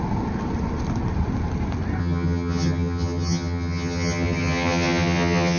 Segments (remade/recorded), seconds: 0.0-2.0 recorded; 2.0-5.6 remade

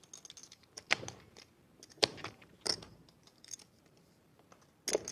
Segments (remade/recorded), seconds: 0.0-0.4 recorded; 0.4-1.5 remade; 1.5-2.0 recorded; 2.0-4.5 remade; 4.5-5.1 recorded

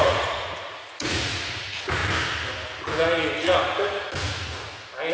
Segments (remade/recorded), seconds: 0.0-2.0 remade; 2.0-5.1 recorded

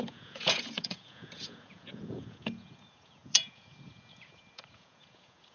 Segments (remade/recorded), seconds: 0.0-5.5 remade

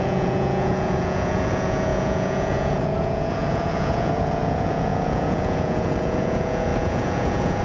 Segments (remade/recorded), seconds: 0.0-7.6 remade

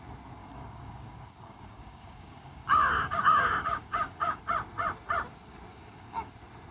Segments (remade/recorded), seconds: 0.0-0.4 recorded; 0.4-4.4 remade; 4.4-5.7 recorded; 5.7-6.3 remade; 6.3-6.7 recorded

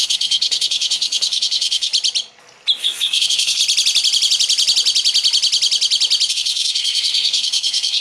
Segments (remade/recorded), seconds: 0.0-1.9 remade; 1.9-2.8 recorded; 2.8-3.6 remade; 3.6-6.3 recorded; 6.3-8.0 remade

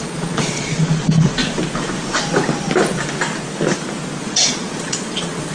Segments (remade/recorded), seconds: 0.0-1.4 remade; 1.4-4.2 recorded; 4.2-5.5 remade